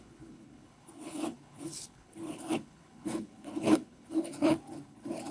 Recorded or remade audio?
remade